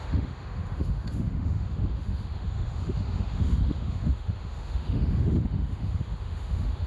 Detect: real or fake fake